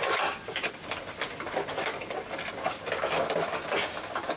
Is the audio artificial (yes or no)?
no